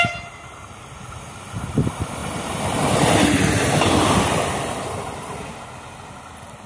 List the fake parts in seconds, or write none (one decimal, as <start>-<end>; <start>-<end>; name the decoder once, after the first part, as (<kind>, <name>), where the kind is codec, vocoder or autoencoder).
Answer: none